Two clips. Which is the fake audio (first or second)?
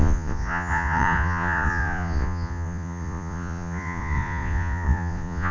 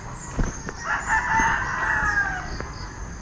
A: first